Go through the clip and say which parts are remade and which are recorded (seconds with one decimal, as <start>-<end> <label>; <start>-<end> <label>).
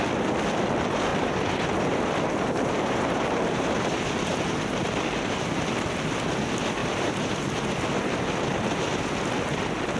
0.0-1.1 recorded; 1.1-5.5 remade; 5.5-6.8 recorded; 6.8-7.8 remade; 7.8-10.0 recorded